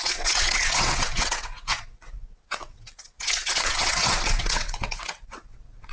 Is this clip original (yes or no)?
no